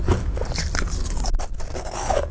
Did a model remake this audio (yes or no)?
no